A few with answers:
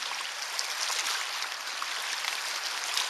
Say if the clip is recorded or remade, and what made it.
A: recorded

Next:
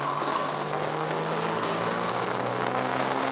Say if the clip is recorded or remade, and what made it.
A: remade, codec, SNAC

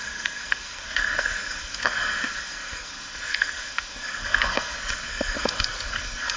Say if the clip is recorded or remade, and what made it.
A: remade, codec, SNAC